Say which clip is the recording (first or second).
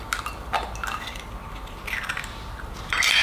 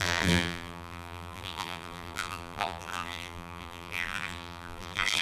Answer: first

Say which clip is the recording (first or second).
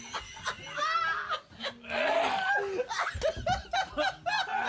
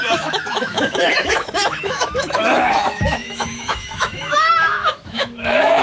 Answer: first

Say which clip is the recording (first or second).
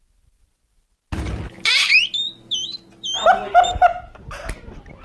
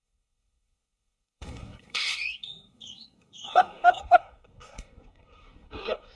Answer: first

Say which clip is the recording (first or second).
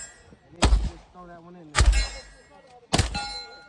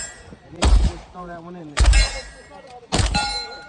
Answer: first